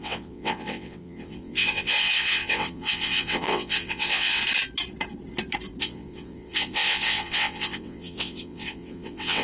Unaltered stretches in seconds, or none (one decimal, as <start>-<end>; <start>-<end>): 4.4-5.8